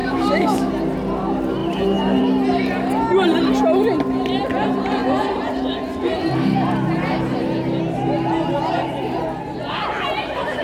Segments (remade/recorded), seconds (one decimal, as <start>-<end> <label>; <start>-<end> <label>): 0.0-0.7 remade; 0.7-10.6 recorded